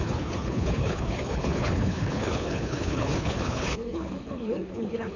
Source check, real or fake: fake